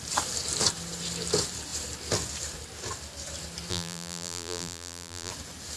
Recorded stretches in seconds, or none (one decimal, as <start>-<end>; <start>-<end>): 0.0-3.7; 5.3-5.8